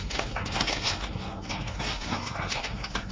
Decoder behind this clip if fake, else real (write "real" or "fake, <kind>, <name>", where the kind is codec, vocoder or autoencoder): fake, codec, SNAC